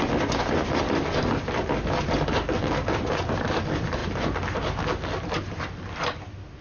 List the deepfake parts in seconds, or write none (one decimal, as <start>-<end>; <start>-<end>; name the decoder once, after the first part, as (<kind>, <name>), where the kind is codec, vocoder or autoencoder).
none